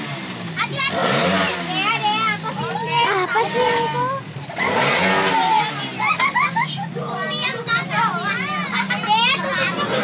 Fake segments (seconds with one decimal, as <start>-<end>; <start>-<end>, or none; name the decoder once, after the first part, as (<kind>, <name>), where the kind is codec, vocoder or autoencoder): none